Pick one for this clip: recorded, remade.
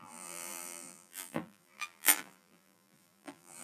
remade